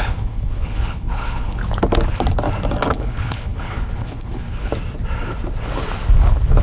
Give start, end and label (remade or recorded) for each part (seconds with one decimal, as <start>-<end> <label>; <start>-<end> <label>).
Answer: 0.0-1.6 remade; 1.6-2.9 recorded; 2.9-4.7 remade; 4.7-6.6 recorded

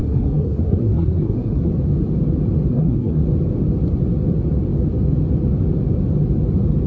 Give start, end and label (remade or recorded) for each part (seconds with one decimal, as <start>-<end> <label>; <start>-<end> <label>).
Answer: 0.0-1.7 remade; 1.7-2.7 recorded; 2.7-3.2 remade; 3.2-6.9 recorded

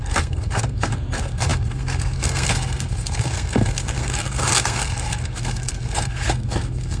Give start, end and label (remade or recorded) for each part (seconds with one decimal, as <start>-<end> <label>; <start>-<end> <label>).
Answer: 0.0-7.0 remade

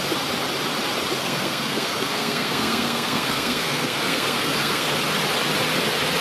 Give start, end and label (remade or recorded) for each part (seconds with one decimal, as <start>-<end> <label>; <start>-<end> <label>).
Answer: 0.0-1.2 recorded; 1.2-4.9 remade; 4.9-6.2 recorded

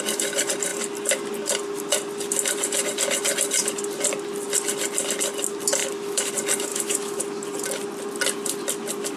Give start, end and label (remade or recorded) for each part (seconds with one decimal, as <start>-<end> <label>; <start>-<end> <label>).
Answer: 0.0-5.8 recorded; 5.8-6.3 remade; 6.3-6.7 recorded; 6.7-7.2 remade; 7.2-9.2 recorded

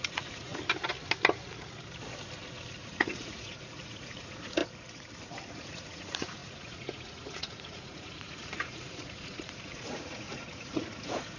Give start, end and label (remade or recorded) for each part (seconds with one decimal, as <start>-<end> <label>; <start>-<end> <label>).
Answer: 0.0-0.5 remade; 0.5-2.8 recorded; 2.8-4.6 remade; 4.6-5.5 recorded; 5.5-11.4 remade